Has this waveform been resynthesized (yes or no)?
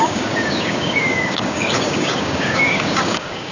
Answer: yes